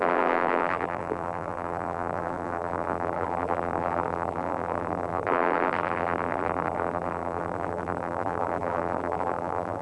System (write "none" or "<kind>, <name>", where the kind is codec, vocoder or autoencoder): vocoder, BigVGAN v2